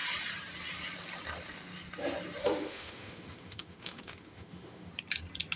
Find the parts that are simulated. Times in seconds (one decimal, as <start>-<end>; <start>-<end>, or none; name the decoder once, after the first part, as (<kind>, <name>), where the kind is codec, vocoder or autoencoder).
2.4-4.9 (autoencoder, DAC-VAE)

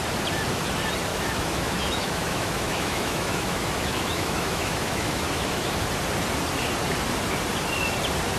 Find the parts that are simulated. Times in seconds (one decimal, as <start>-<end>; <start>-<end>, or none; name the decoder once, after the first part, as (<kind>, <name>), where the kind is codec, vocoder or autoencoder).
1.1-5.8 (autoencoder, DAC-VAE)